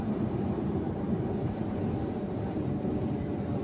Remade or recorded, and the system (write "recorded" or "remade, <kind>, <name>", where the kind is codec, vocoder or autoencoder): remade, vocoder, BigVGAN v2